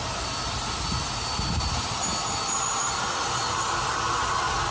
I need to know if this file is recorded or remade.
recorded